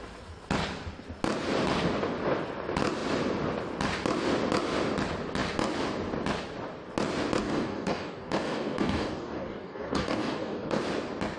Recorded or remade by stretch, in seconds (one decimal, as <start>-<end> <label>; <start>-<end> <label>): 0.0-7.4 recorded; 7.4-10.8 remade; 10.8-11.4 recorded